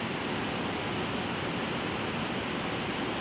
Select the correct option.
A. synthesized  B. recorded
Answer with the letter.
B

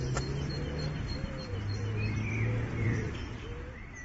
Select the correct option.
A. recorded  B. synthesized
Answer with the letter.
B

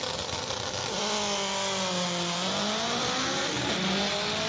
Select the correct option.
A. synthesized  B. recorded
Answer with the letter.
B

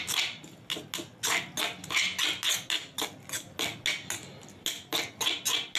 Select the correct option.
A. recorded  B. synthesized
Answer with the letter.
A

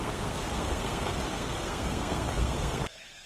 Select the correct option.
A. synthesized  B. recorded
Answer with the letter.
A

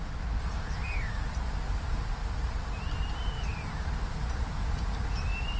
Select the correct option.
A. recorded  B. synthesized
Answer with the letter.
A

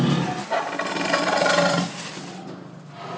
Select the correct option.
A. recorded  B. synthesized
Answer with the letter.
A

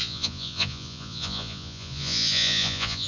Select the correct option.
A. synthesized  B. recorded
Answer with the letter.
A